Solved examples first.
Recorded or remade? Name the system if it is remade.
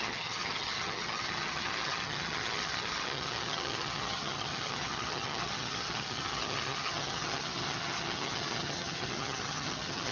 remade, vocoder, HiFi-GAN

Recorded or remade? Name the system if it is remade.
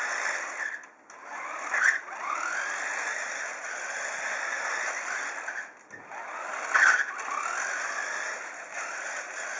recorded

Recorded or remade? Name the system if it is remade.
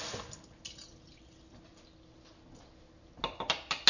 recorded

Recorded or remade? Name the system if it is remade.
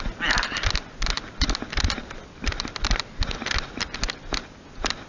recorded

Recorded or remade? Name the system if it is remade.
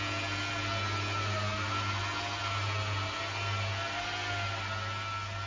recorded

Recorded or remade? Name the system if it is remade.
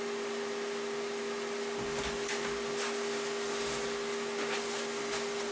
recorded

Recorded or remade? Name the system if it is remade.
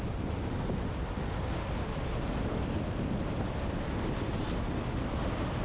recorded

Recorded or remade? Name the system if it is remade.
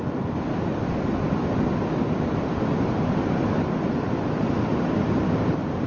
recorded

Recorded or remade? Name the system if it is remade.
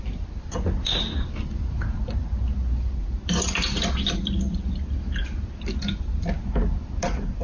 recorded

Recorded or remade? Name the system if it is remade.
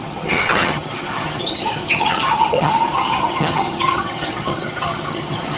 remade, vocoder, HiFi-GAN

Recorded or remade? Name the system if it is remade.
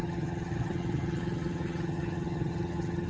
remade, vocoder, HiFi-GAN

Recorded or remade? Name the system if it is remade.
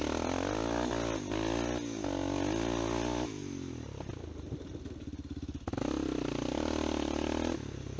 recorded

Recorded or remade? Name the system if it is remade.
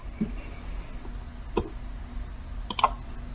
recorded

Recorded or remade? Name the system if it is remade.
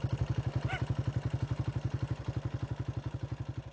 recorded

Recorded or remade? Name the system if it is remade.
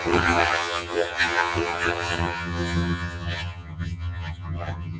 remade, vocoder, HiFi-GAN